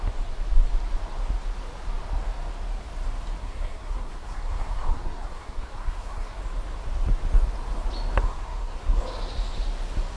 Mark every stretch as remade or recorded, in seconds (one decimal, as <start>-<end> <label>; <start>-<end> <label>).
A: 0.0-3.4 recorded; 3.4-6.4 remade; 6.4-8.3 recorded; 8.3-9.0 remade; 9.0-10.2 recorded